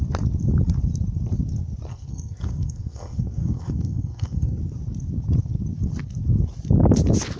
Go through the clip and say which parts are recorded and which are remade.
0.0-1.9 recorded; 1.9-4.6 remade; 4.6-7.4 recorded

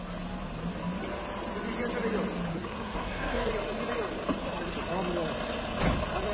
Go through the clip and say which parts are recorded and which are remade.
0.0-2.5 recorded; 2.5-3.5 remade; 3.5-6.3 recorded

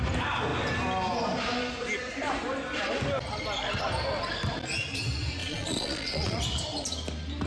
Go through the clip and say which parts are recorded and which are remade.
0.0-5.4 recorded; 5.4-6.4 remade; 6.4-7.5 recorded

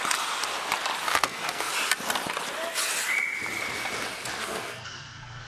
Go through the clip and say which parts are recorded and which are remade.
0.0-1.1 recorded; 1.1-1.7 remade; 1.7-4.4 recorded; 4.4-5.5 remade

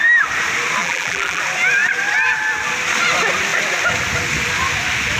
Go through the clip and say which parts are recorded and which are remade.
0.0-0.8 recorded; 0.8-1.4 remade; 1.4-5.2 recorded

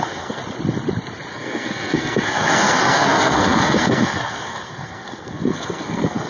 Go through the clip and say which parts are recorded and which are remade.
0.0-0.4 remade; 0.4-1.3 recorded; 1.3-6.3 remade